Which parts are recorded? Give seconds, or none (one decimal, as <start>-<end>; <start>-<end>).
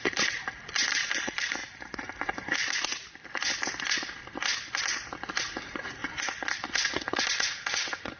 1.6-5.4; 6.0-6.8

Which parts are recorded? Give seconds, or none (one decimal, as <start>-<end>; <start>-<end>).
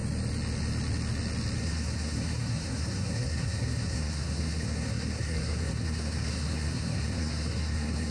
0.0-1.6